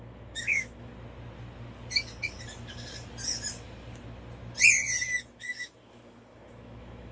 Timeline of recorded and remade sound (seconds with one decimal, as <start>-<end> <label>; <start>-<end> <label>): 0.0-0.9 remade; 0.9-5.2 recorded; 5.2-7.1 remade